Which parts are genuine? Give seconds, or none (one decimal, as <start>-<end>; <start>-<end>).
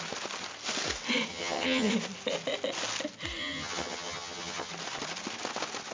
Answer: 0.0-1.3; 1.9-3.4; 4.7-5.9